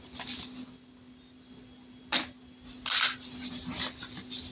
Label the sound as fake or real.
real